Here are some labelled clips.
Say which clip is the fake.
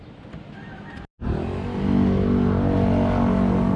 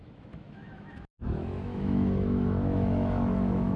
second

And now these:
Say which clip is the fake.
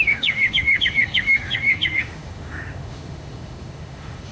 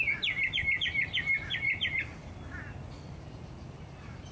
first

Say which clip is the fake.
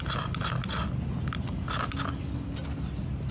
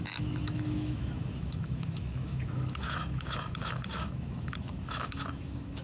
second